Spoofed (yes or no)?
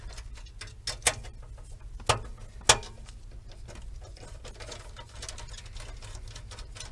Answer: no